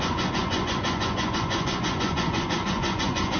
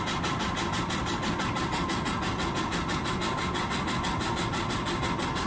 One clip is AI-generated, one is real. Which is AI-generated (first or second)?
first